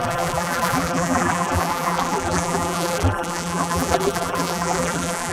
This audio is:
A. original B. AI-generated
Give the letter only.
B